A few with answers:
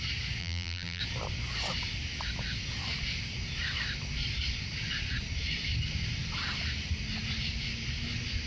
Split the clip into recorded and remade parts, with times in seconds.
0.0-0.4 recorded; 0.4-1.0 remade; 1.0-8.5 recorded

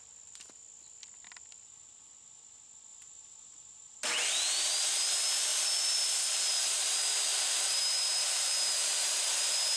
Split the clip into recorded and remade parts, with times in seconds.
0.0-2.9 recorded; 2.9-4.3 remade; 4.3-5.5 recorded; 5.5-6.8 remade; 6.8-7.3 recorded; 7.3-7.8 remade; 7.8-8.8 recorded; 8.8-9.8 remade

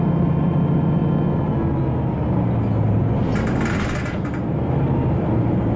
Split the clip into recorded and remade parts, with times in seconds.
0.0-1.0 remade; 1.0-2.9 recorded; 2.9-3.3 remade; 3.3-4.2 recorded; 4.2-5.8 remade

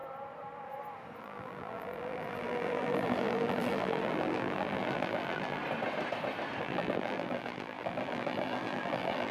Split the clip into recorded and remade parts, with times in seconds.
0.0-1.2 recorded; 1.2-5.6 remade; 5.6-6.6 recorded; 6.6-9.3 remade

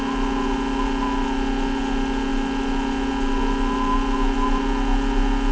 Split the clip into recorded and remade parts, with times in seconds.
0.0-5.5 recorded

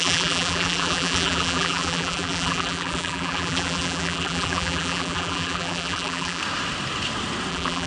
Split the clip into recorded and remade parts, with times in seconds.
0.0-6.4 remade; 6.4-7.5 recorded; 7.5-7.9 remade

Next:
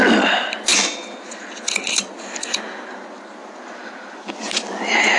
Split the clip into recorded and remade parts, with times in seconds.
0.0-5.2 recorded